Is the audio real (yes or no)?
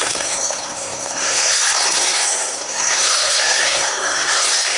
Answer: no